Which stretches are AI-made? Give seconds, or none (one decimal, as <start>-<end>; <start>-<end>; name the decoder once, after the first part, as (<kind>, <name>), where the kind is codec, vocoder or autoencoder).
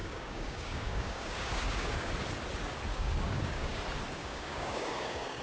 0.0-2.1 (codec, DAC); 2.9-3.8; 4.2-5.4